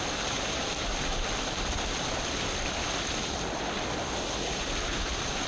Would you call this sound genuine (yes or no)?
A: yes